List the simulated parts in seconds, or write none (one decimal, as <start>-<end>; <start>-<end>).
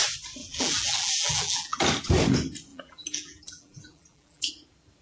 0.4-1.8; 2.7-4.5